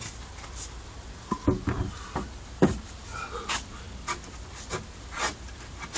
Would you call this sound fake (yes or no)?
no